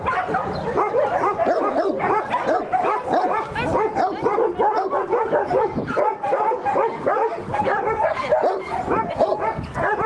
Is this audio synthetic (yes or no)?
no